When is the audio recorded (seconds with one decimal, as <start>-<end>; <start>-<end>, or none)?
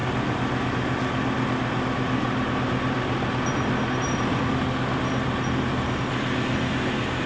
0.0-7.3